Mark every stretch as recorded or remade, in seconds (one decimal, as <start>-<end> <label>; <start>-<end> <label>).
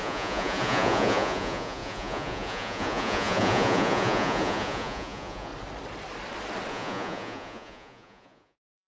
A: 0.0-5.5 remade; 5.5-6.7 recorded; 6.7-8.9 remade